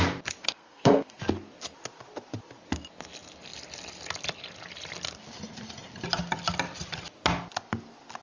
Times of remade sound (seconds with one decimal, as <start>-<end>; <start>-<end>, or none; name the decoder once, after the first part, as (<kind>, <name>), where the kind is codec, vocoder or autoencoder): 0.4-1.2 (codec, SNAC)